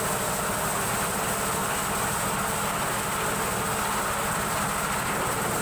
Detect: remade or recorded recorded